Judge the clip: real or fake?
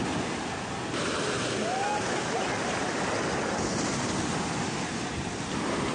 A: real